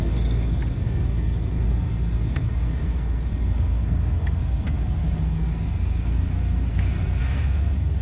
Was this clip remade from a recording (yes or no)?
yes